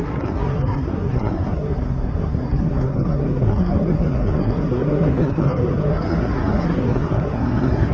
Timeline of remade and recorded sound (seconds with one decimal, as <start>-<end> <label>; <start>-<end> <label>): 0.0-7.9 remade